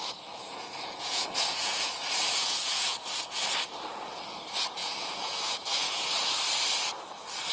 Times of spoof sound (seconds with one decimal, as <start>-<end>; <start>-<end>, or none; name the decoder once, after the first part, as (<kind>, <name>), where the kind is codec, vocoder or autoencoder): 0.4-1.9 (vocoder, Vocos); 2.4-3.1; 4.8-6.1